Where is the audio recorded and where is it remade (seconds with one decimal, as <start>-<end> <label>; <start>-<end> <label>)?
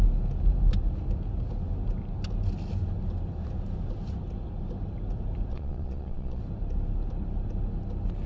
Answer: 0.0-5.5 recorded; 5.5-6.4 remade; 6.4-8.3 recorded